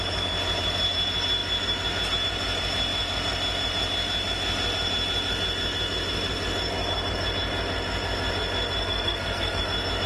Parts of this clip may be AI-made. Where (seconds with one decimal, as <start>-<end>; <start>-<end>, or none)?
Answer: 8.8-9.6